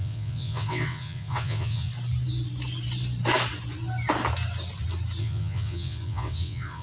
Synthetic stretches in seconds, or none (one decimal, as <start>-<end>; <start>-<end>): 0.0-1.9; 5.2-6.8

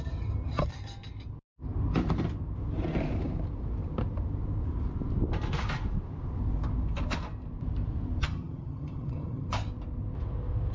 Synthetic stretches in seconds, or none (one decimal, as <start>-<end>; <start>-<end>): 8.2-9.5

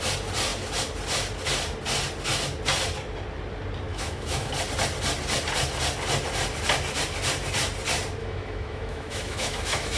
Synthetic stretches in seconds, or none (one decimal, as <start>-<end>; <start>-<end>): 3.9-4.5; 8.2-10.0

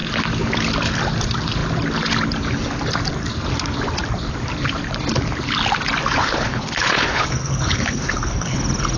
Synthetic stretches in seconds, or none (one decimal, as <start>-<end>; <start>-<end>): 6.2-8.6